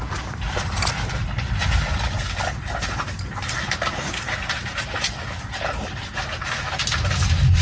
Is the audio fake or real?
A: real